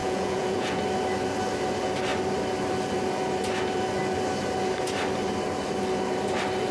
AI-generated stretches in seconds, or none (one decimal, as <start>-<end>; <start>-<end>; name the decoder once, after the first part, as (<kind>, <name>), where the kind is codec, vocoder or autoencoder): 0.0-0.8 (vocoder, Vocos)